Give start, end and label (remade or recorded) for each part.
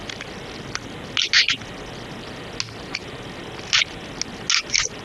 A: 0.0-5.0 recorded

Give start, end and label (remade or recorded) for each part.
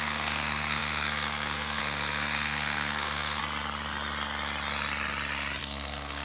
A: 0.0-3.4 remade; 3.4-5.6 recorded; 5.6-6.2 remade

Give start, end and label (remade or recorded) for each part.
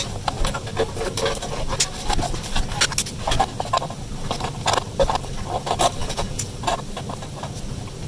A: 0.0-6.0 recorded; 6.0-6.6 remade; 6.6-8.1 recorded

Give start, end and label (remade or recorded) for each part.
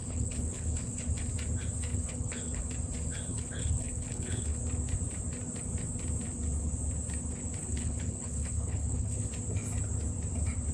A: 0.0-1.1 remade; 1.1-1.9 recorded; 1.9-2.7 remade; 2.7-3.3 recorded; 3.3-4.6 remade; 4.6-7.6 recorded; 7.6-9.3 remade; 9.3-10.7 recorded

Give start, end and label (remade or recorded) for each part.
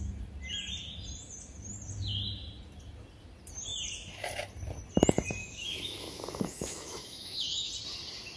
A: 0.0-5.4 recorded; 5.4-7.7 remade; 7.7-8.4 recorded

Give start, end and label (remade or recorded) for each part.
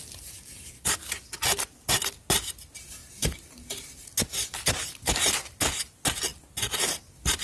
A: 0.0-7.4 recorded